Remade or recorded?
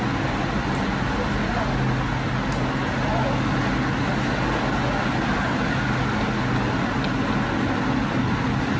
recorded